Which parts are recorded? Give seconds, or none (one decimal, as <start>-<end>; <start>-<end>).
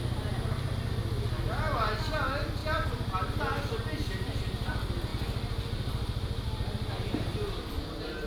0.0-8.3